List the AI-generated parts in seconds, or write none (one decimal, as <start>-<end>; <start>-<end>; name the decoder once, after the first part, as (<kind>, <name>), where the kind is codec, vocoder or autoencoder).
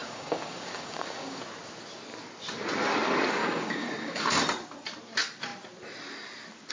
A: 0.0-1.4 (codec, DAC); 3.4-4.4